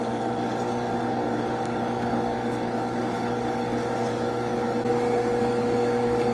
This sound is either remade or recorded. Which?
remade